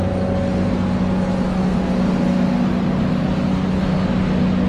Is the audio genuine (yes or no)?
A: yes